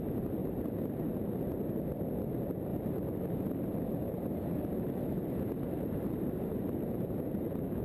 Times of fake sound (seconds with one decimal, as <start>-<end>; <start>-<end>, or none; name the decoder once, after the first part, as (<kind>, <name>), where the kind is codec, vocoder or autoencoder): 0.4-1.8 (vocoder, BigVGAN v2); 2.7-7.8